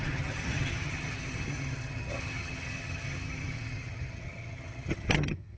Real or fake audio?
fake